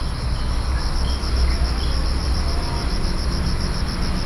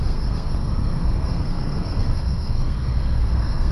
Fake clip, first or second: second